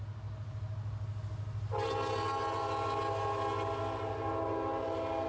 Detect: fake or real real